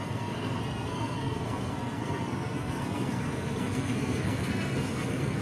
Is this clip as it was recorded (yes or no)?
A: no